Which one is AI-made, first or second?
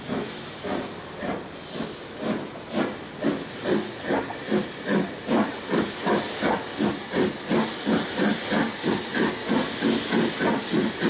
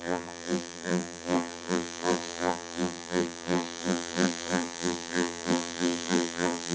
second